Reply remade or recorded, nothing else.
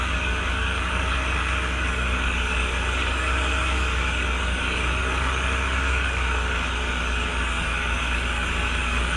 remade